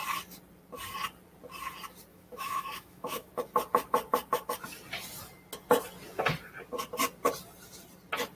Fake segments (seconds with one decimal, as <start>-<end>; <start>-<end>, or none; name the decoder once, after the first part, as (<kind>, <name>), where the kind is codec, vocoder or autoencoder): 2.1-3.3 (autoencoder, DAC-VAE)